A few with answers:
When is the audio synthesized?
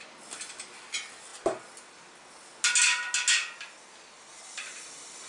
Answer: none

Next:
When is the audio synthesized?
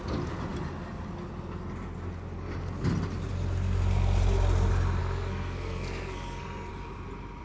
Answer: 5.0-6.7 (codec, SNAC)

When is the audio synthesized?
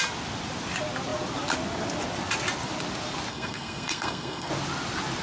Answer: 3.3-4.5 (codec, SNAC)